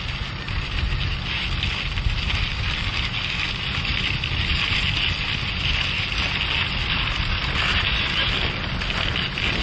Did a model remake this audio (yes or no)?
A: no